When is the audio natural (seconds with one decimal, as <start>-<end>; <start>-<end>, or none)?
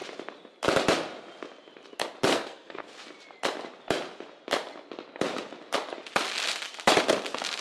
0.0-2.3; 2.9-7.6